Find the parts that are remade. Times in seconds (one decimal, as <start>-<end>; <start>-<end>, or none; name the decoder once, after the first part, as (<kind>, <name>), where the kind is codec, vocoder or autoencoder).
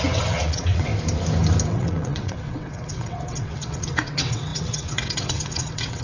0.0-0.9 (vocoder, WaveNeXt); 1.7-6.0